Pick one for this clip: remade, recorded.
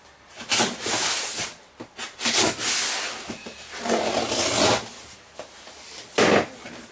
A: recorded